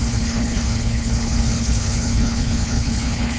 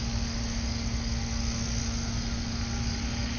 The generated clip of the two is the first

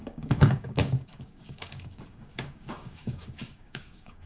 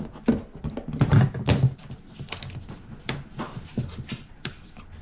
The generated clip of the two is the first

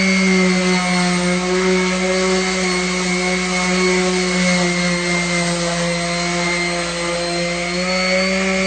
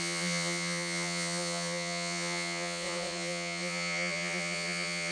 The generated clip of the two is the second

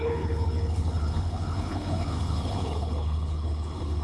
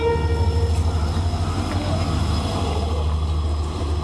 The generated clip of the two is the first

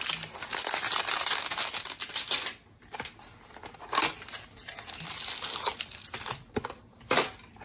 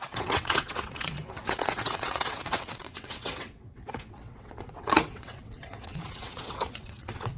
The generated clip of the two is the second